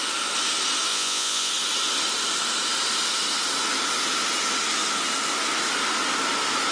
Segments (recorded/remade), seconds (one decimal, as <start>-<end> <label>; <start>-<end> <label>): 0.0-0.9 recorded; 0.9-1.5 remade; 1.5-6.7 recorded